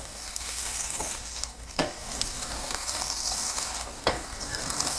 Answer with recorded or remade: remade